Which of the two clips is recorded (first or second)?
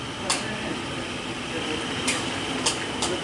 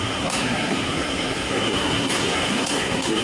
first